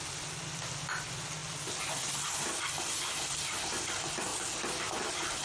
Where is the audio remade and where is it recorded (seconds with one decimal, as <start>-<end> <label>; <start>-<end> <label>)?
0.0-5.4 recorded